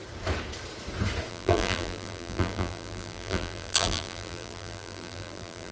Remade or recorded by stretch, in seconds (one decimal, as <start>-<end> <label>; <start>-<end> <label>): 0.0-1.3 recorded; 1.3-5.7 remade